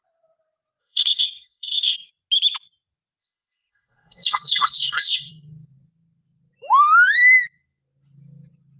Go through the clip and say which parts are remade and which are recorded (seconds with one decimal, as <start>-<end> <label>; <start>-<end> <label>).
0.0-0.8 recorded; 0.8-2.1 remade; 2.1-3.2 recorded; 3.2-5.3 remade; 5.3-8.8 recorded